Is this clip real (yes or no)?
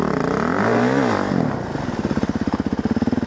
yes